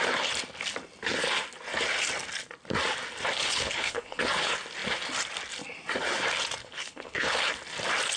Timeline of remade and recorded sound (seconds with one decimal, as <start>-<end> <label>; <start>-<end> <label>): 0.0-3.4 recorded; 3.4-4.2 remade; 4.2-6.6 recorded; 6.6-7.4 remade; 7.4-8.2 recorded